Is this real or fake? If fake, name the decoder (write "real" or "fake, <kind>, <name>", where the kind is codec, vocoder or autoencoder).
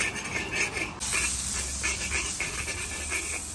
real